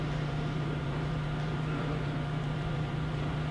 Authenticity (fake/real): fake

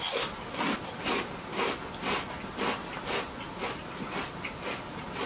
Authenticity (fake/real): real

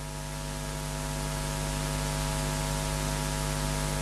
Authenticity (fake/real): real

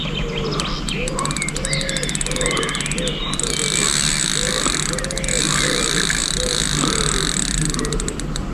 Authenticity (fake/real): real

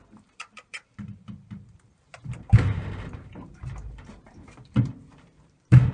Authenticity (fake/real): fake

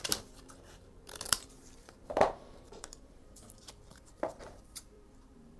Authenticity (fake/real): fake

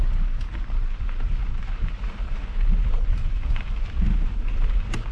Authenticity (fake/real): fake